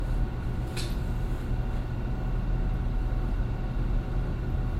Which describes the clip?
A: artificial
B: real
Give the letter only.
B